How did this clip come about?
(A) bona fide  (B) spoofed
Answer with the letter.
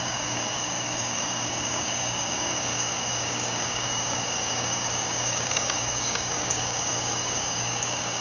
B